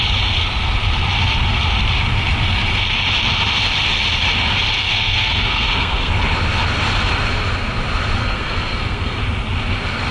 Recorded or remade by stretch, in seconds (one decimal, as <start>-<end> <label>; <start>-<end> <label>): 0.0-4.8 recorded; 4.8-6.1 remade; 6.1-8.2 recorded; 8.2-9.2 remade; 9.2-10.1 recorded